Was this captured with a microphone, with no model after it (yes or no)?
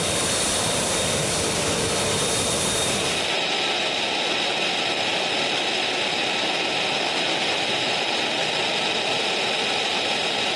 yes